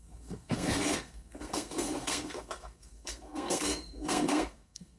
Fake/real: fake